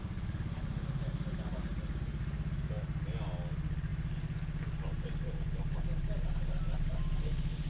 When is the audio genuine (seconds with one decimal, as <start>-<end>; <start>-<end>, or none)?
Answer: 0.0-7.7